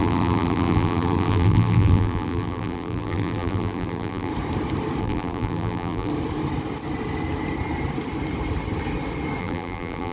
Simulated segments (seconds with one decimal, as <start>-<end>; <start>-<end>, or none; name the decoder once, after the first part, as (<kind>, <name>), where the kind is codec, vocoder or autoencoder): 0.0-4.3 (vocoder, BigVGAN v2); 5.0-6.1; 9.4-10.1